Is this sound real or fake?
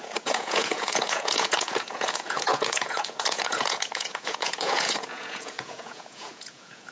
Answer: fake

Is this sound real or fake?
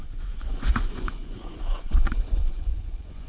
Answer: fake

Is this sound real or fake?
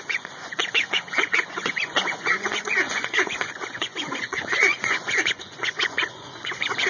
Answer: fake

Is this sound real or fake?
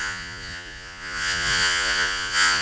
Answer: fake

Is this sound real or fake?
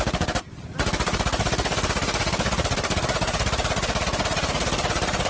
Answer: real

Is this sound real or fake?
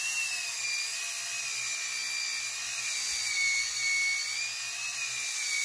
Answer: real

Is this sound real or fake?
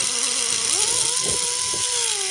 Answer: real